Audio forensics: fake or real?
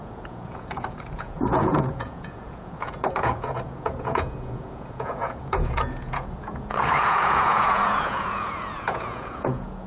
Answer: fake